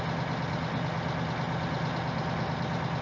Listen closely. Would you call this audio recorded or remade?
recorded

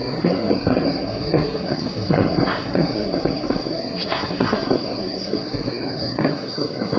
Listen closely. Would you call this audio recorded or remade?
remade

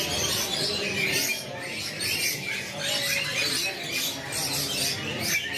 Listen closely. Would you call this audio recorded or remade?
recorded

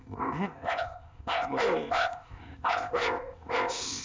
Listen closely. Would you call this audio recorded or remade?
remade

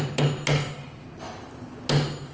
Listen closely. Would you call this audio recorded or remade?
recorded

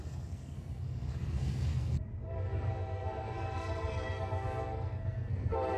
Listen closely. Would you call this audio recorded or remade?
remade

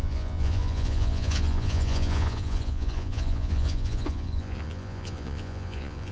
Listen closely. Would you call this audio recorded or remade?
remade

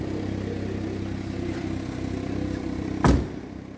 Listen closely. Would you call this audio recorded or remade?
recorded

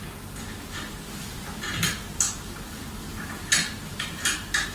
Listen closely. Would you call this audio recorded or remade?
recorded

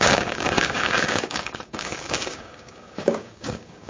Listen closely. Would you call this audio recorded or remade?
remade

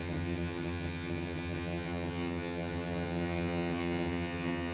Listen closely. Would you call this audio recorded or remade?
remade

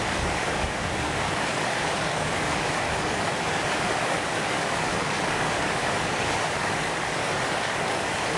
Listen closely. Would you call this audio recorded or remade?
remade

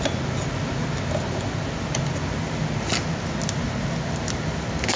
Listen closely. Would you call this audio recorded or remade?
recorded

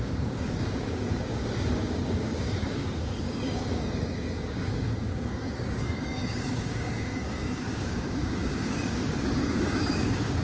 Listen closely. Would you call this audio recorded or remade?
remade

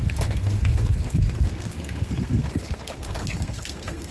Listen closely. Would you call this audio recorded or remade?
remade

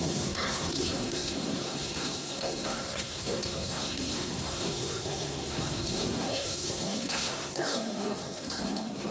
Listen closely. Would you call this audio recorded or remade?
remade